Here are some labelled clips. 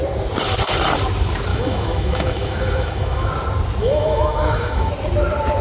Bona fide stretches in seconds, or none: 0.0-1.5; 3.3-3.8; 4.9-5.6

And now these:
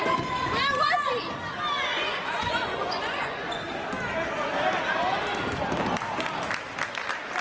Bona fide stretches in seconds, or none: 0.0-1.9; 3.6-7.4

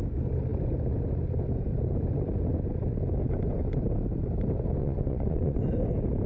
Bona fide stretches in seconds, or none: 0.0-4.8; 5.7-6.3

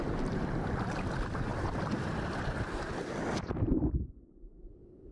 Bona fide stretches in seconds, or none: 0.0-1.5; 4.6-5.1